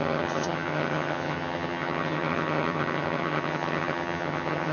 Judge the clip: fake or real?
fake